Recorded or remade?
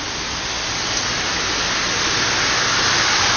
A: recorded